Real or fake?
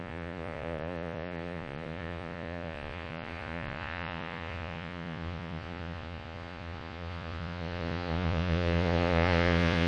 fake